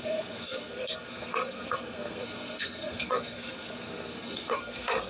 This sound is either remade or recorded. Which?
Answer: remade